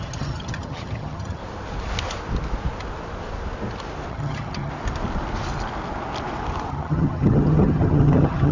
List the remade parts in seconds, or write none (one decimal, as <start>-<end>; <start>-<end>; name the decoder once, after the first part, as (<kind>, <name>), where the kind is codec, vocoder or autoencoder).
0.0-1.4 (vocoder, HiFi-GAN); 4.1-4.7; 6.7-8.5